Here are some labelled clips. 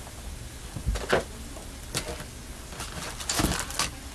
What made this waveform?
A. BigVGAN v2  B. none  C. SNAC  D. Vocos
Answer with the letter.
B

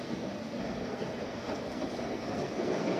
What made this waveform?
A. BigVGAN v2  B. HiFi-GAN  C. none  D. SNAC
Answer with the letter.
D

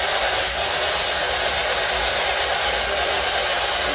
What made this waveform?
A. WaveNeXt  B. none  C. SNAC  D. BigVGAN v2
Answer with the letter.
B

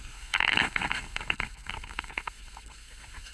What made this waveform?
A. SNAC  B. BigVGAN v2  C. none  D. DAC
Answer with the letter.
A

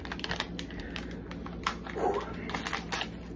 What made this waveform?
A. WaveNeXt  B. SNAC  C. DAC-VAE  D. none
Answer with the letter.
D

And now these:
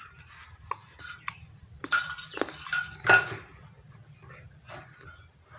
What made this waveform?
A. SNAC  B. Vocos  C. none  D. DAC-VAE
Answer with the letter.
C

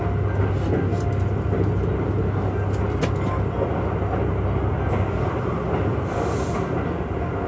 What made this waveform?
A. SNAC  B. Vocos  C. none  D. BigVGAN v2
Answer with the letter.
C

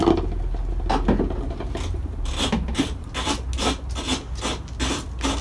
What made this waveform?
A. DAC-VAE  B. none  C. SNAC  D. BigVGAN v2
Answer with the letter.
B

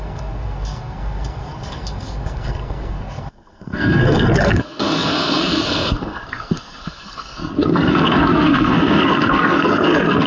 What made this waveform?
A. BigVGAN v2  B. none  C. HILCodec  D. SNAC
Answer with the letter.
D